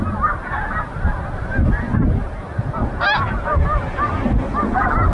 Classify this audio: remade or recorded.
recorded